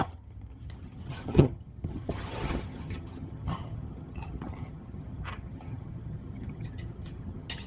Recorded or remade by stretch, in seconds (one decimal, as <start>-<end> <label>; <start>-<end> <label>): 0.0-7.7 remade